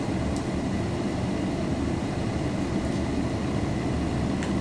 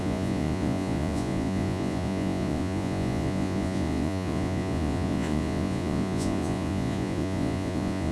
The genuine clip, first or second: first